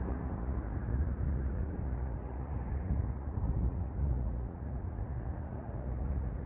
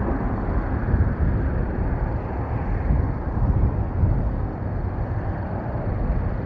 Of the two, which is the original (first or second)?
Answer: second